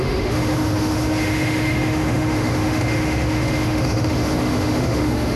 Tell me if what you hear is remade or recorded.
remade